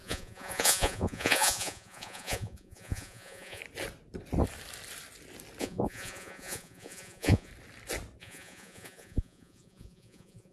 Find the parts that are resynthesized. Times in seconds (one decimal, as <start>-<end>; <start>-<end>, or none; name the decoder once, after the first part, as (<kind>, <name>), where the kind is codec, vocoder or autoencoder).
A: 0.0-3.6 (vocoder, Vocos); 5.6-7.5; 8.2-10.5